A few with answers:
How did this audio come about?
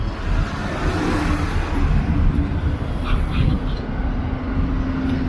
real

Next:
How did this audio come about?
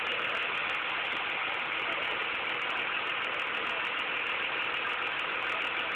real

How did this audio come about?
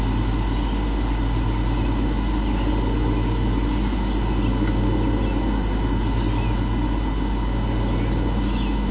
real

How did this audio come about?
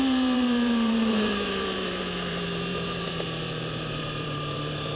fake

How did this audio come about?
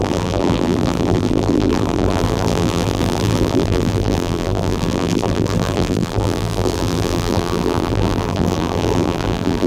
fake